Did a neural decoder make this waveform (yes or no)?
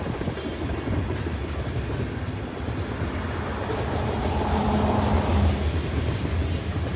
no